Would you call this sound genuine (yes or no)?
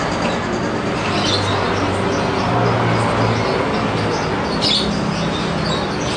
yes